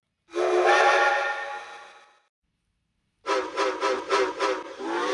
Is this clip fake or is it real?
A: real